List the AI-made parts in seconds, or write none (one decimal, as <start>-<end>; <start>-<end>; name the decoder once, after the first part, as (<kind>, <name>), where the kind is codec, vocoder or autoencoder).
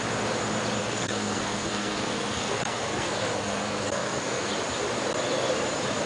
0.8-4.5 (codec, SNAC)